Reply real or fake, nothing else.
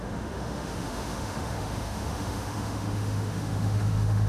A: fake